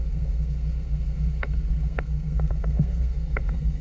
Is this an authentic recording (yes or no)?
no